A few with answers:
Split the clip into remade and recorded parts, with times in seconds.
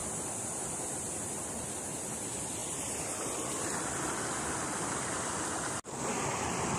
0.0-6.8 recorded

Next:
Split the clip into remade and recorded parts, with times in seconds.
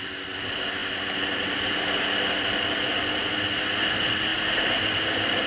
0.0-5.5 recorded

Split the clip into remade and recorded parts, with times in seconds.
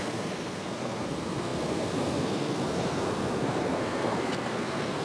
0.0-5.0 remade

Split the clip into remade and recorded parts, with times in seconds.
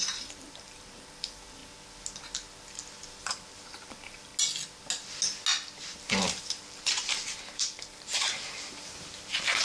0.0-1.6 remade; 1.6-3.2 recorded; 3.2-4.3 remade; 4.3-6.0 recorded; 6.0-9.6 remade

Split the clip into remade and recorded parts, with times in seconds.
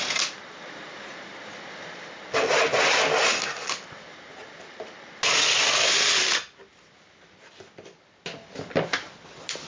0.0-9.7 recorded